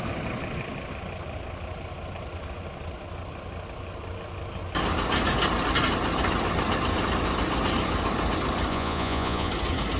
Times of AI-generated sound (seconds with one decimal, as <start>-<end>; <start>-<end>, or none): 8.7-9.5